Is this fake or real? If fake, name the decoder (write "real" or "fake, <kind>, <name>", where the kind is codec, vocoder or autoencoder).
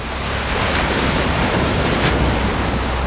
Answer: fake, vocoder, BigVGAN v2